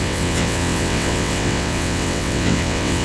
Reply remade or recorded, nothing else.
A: remade